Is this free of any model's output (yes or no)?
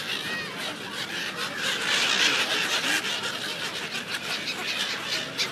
yes